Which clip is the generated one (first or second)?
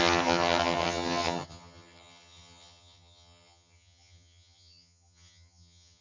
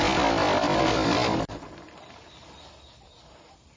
first